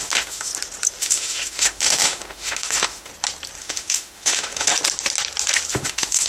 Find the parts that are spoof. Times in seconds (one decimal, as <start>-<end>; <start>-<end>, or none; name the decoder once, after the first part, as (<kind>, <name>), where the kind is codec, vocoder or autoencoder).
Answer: 0.0-0.5 (autoencoder, DAC-VAE); 1.0-3.1; 3.6-4.7; 5.7-6.3